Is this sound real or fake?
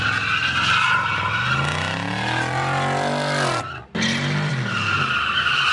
real